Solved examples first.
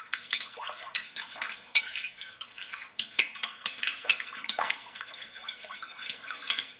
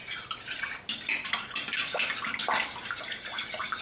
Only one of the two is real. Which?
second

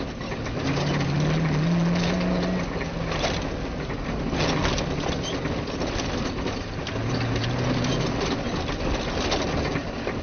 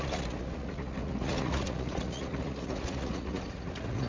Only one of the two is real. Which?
first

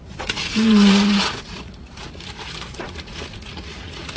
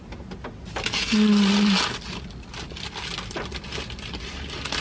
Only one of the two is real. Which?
second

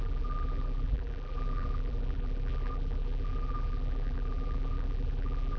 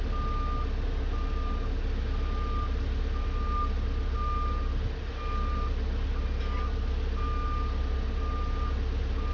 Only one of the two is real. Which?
second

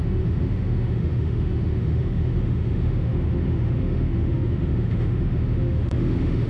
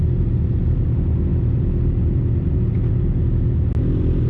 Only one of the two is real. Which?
second